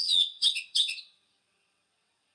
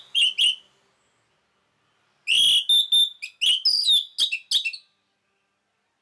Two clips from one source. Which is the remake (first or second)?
first